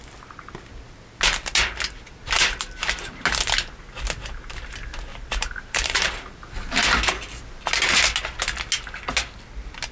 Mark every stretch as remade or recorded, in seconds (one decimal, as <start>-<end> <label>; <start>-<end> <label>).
0.0-5.1 recorded; 5.1-6.1 remade; 6.1-9.9 recorded